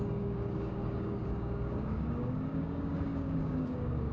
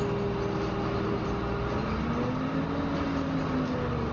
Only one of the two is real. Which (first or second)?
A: second